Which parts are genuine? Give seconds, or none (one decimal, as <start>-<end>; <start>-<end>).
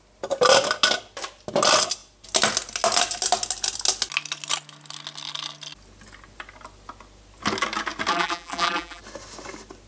0.0-8.1; 9.0-9.9